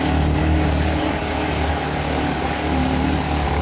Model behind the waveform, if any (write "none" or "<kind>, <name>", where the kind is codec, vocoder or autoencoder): codec, DAC